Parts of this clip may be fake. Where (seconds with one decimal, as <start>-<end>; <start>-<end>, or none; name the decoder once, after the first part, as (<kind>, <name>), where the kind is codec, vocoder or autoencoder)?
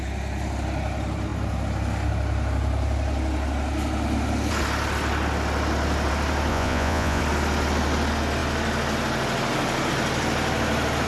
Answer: 6.5-7.2 (vocoder, Vocos)